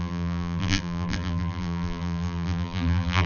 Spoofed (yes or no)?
yes